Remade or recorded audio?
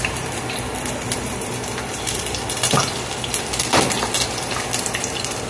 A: recorded